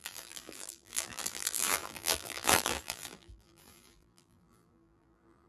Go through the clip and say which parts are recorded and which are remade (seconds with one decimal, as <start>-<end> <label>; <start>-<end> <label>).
0.0-5.5 remade